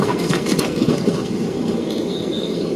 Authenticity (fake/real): fake